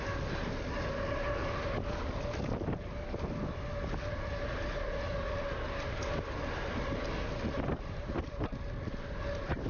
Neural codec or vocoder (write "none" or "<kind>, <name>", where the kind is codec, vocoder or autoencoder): none